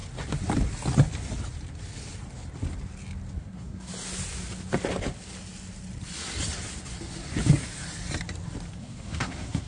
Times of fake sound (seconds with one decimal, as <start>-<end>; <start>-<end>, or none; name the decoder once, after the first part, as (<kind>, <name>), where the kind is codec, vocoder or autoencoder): 3.4-3.9 (codec, SNAC); 8.8-9.7